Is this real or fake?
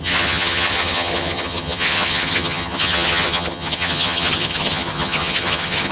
fake